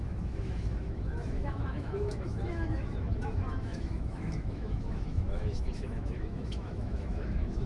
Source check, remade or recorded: remade